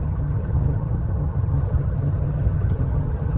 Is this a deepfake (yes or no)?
yes